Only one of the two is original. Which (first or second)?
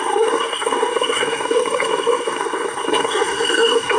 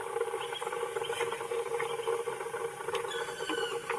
second